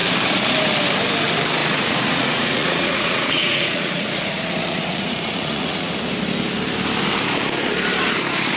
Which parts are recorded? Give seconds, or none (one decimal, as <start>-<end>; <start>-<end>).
0.0-1.6; 5.9-8.6